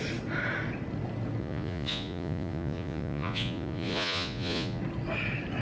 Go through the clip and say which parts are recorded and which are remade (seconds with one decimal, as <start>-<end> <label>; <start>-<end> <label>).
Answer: 0.0-1.4 recorded; 1.4-4.8 remade; 4.8-5.6 recorded